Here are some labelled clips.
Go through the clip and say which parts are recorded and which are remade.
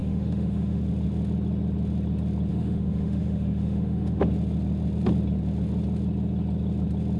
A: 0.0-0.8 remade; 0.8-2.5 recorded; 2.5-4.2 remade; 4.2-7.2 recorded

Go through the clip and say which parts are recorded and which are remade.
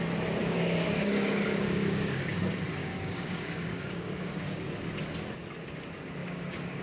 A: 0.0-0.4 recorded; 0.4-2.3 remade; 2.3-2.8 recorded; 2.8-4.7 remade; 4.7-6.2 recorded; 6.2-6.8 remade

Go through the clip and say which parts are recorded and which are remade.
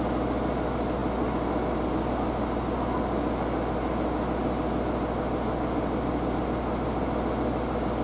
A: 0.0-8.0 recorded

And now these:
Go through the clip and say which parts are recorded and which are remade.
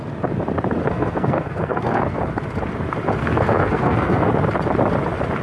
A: 0.0-0.8 recorded; 0.8-2.2 remade; 2.2-3.2 recorded; 3.2-4.3 remade; 4.3-5.4 recorded